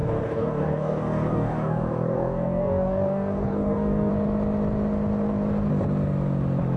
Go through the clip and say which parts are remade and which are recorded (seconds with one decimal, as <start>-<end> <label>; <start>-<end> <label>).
0.0-4.1 remade; 4.1-6.8 recorded